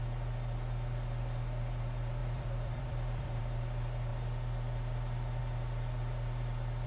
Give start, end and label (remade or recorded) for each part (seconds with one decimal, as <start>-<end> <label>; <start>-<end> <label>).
0.0-2.2 recorded; 2.2-3.4 remade; 3.4-6.9 recorded